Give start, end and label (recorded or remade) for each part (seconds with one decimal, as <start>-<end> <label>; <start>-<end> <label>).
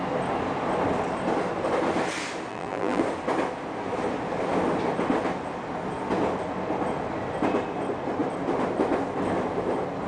0.0-2.5 recorded; 2.5-3.0 remade; 3.0-10.1 recorded